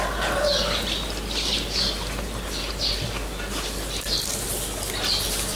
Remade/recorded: recorded